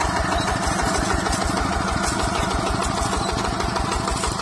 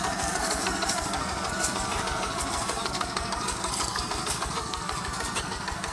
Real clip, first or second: first